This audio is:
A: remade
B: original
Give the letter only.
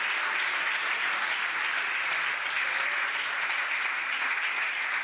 B